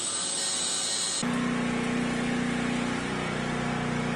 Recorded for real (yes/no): yes